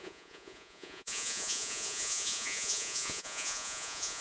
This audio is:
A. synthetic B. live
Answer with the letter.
A